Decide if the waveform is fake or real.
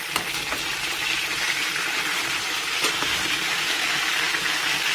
fake